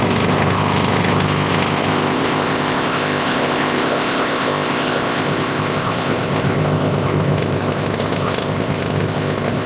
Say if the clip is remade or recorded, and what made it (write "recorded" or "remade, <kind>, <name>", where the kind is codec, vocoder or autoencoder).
remade, codec, ZipCodec